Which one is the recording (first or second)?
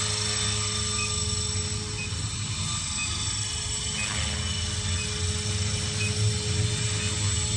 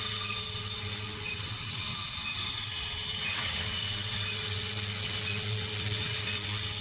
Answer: first